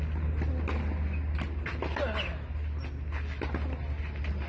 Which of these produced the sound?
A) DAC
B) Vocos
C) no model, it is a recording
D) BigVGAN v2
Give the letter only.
C